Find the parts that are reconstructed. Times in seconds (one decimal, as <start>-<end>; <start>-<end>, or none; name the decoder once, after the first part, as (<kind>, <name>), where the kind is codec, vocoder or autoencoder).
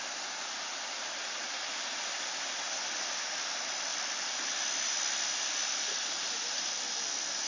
3.9-4.5 (vocoder, BigVGAN v2)